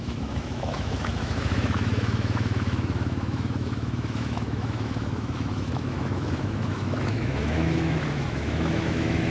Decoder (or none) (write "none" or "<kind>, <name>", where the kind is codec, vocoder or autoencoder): autoencoder, DAC-VAE